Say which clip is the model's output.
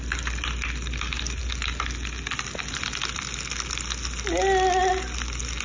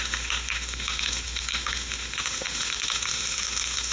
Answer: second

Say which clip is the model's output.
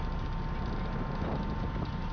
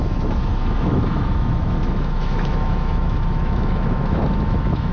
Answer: second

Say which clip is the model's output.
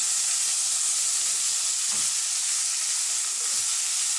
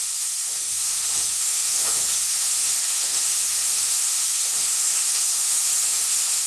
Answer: second